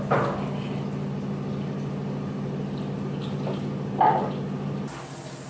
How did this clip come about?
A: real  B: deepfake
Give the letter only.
A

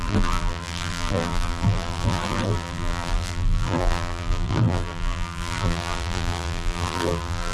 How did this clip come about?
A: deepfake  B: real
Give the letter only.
A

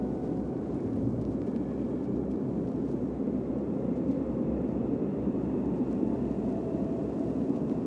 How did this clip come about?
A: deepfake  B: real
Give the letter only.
B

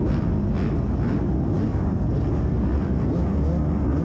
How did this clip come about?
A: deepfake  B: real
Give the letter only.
B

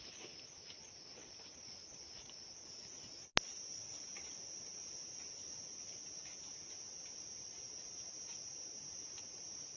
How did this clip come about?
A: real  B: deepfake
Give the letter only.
A